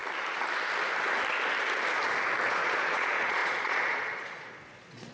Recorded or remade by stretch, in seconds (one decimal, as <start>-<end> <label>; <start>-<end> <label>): 0.0-2.5 recorded; 2.5-5.1 remade